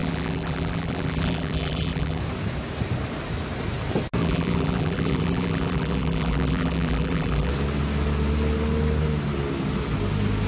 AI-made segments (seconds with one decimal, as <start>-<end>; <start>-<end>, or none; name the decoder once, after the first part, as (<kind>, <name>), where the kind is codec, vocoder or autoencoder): 0.0-2.2 (vocoder, BigVGAN v2); 4.2-7.5